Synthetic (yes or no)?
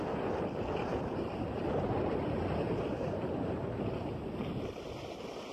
no